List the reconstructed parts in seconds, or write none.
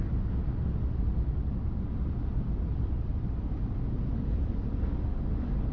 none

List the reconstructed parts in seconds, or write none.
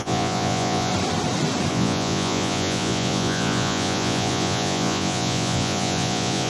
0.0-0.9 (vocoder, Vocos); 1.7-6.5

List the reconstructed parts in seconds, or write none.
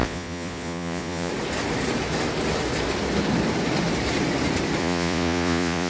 0.0-1.3 (vocoder, Vocos); 4.8-5.9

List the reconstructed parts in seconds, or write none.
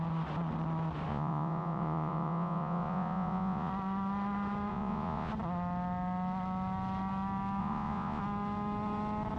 1.1-3.7 (vocoder, Vocos); 4.7-5.3; 7.6-8.2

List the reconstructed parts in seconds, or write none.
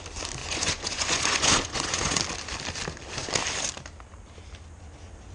0.4-2.2 (vocoder, Vocos)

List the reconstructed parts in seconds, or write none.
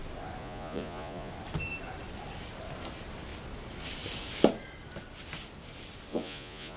0.4-1.3 (vocoder, Vocos); 6.1-6.8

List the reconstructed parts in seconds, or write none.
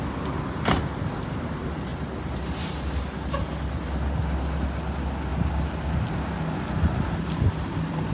none